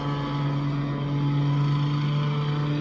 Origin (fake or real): real